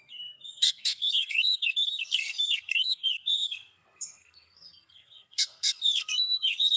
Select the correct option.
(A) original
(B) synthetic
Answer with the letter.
B